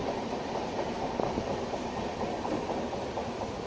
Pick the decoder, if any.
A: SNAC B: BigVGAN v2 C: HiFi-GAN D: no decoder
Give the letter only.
D